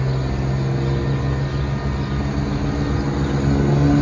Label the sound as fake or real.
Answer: real